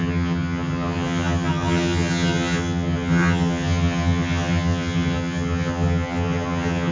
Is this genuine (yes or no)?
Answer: no